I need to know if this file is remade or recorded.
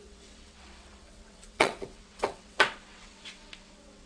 remade